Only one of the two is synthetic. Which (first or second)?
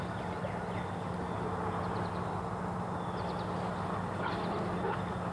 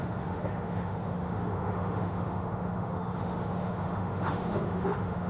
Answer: second